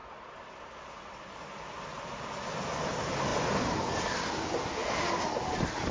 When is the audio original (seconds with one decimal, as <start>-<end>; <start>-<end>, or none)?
0.0-5.9